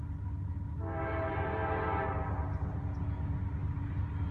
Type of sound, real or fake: real